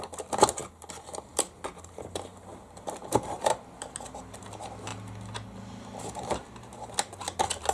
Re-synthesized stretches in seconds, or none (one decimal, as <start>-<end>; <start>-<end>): 0.6-4.4; 4.9-6.5